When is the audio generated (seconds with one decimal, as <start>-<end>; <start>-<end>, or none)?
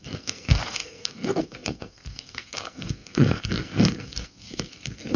0.0-5.2